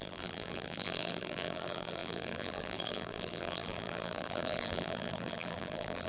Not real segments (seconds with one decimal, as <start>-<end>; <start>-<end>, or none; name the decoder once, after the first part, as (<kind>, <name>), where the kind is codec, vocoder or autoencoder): 0.0-6.1 (vocoder, BigVGAN v2)